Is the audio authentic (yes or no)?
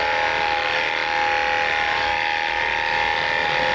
yes